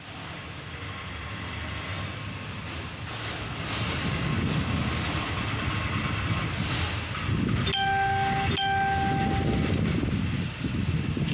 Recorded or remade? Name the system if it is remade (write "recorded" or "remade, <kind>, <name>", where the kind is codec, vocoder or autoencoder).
recorded